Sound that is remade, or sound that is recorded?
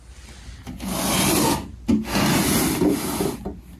recorded